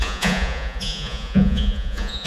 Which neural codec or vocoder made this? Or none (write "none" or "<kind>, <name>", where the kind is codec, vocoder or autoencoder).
vocoder, Vocos